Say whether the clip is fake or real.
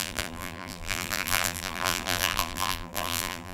fake